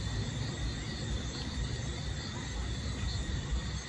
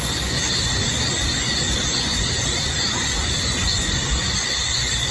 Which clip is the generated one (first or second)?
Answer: second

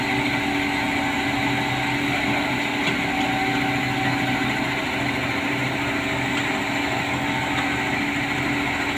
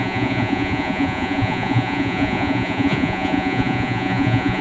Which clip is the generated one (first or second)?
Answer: second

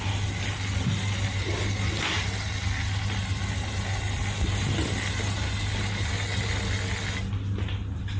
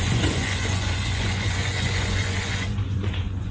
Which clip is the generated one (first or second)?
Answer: second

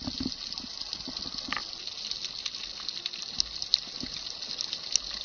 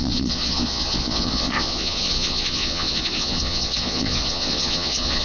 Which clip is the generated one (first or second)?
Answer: second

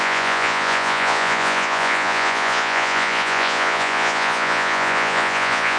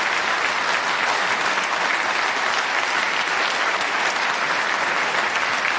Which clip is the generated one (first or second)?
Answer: first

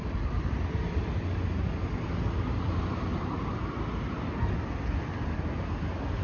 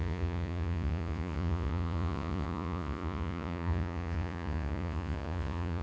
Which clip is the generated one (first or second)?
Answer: second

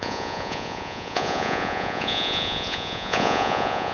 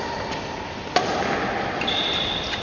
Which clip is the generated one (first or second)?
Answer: first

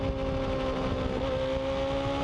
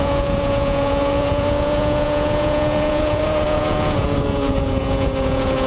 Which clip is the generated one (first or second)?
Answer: second